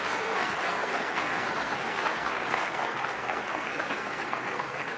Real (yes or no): no